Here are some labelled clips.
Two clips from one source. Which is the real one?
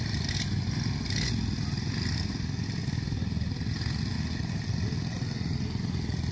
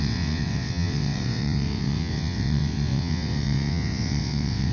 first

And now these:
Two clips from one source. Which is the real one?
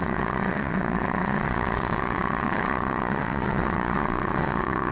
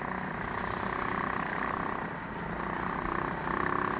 second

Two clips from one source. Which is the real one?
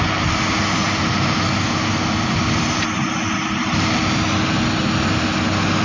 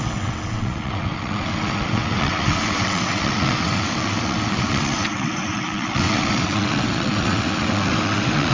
first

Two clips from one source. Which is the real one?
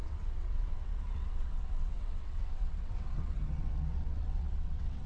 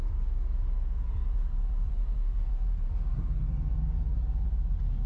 second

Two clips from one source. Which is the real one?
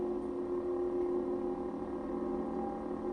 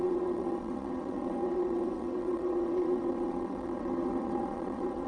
first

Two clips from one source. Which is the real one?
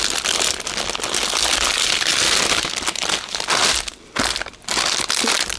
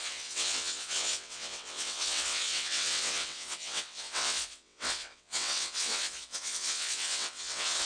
first